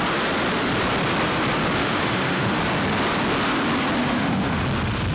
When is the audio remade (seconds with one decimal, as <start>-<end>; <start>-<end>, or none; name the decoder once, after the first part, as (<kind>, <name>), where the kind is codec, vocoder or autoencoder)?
1.8-2.6 (autoencoder, DAC-VAE); 4.0-4.6

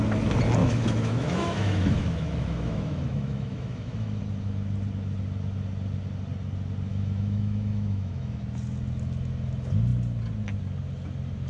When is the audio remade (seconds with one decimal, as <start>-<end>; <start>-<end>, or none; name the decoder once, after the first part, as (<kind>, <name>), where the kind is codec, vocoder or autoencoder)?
0.6-4.2 (autoencoder, DAC-VAE); 6.9-8.4

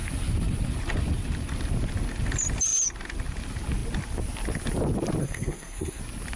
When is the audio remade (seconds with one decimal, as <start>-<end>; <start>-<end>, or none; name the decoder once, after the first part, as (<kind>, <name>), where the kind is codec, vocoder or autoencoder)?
5.2-6.0 (codec, SNAC)

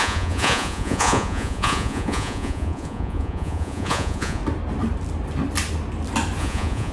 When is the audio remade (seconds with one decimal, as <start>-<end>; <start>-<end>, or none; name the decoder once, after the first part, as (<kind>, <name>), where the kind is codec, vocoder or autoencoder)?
0.0-4.4 (vocoder, Vocos); 6.4-6.9

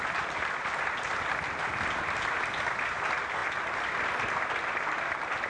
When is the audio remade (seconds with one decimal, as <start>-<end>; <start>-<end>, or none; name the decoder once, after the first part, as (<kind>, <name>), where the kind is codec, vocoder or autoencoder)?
none